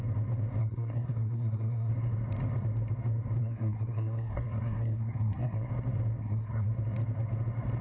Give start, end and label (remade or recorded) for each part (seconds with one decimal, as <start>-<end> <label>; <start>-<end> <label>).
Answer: 0.0-0.6 recorded; 0.6-1.9 remade; 1.9-3.4 recorded; 3.4-5.7 remade; 5.7-6.2 recorded; 6.2-6.7 remade; 6.7-7.8 recorded